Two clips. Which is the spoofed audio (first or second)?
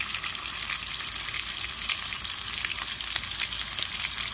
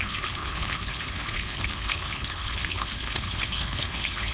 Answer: second